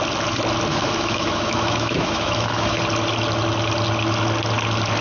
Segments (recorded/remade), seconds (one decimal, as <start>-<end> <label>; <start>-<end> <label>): 0.0-0.7 recorded; 0.7-2.8 remade; 2.8-5.0 recorded